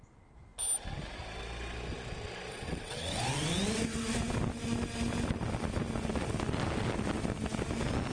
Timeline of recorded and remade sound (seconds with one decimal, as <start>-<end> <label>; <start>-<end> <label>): 0.0-2.5 recorded; 2.5-3.2 remade; 3.2-8.1 recorded